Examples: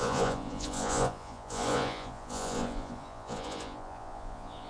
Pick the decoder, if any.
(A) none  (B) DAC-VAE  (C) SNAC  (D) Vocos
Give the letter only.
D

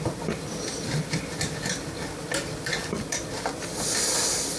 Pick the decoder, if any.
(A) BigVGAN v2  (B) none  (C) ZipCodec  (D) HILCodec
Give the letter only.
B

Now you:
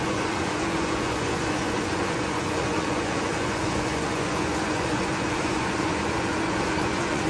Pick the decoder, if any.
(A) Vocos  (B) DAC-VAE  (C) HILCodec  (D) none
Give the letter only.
A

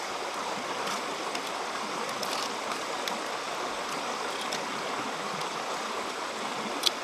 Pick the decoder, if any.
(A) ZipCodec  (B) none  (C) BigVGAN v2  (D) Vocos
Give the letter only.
B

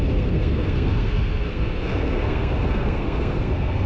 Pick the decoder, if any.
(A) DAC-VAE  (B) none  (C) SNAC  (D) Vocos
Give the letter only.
C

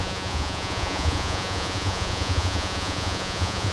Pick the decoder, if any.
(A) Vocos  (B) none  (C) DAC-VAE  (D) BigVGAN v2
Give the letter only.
A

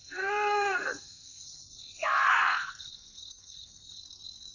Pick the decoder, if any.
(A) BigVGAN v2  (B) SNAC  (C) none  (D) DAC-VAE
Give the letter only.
B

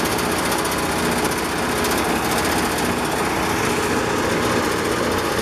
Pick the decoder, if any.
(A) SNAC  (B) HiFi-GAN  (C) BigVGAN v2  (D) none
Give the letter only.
D